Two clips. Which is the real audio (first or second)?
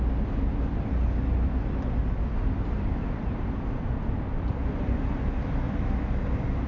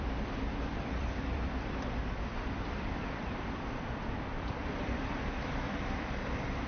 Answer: first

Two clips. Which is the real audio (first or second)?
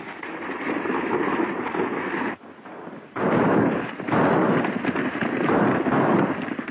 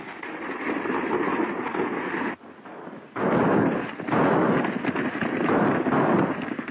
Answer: second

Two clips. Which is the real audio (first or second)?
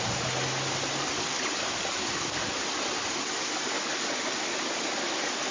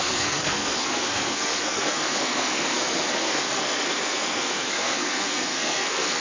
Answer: first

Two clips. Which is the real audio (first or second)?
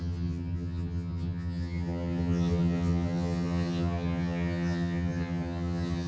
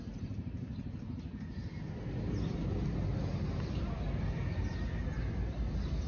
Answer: second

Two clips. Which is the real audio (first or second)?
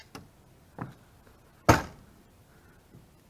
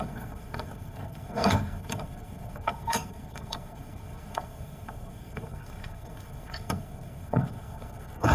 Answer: first